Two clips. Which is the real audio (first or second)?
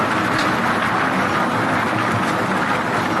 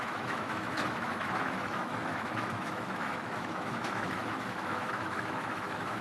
first